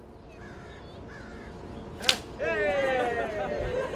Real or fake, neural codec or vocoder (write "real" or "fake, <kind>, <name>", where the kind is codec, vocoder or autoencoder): real